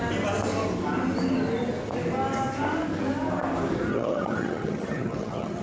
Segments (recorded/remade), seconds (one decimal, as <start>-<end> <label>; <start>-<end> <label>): 0.0-3.9 recorded; 3.9-5.6 remade